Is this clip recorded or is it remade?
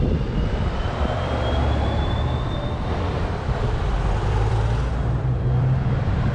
remade